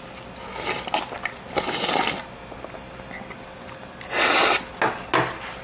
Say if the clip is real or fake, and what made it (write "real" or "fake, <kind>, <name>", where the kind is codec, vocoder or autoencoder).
real